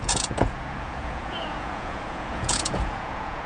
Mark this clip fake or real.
fake